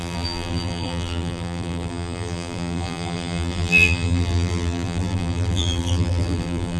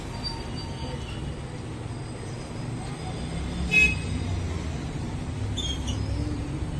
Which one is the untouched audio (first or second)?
second